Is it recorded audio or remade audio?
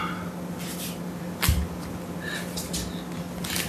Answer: recorded